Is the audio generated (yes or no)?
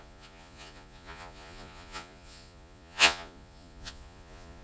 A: yes